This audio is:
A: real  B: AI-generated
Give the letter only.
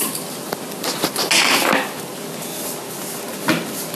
A